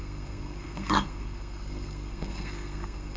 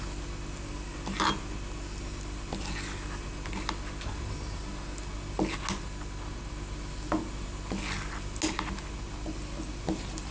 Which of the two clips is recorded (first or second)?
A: second